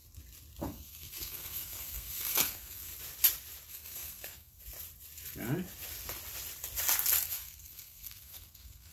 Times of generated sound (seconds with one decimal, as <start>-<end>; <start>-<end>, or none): 0.6-2.9; 3.7-4.6; 7.3-8.9